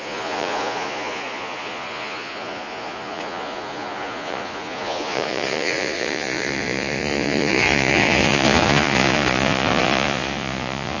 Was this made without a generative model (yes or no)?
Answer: no